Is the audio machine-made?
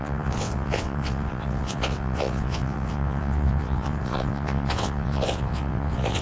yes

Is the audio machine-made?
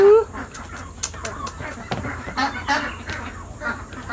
no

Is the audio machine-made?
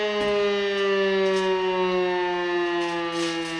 no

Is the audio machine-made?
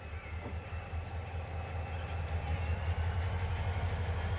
no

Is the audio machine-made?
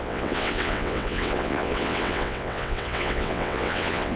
yes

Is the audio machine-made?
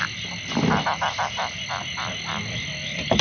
no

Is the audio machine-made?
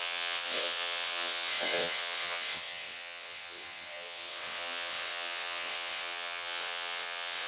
yes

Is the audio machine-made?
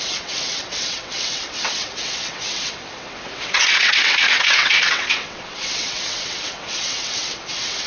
yes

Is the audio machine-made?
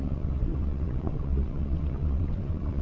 yes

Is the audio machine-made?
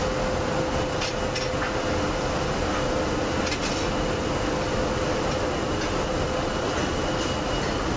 no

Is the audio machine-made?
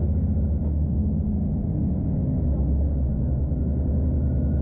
no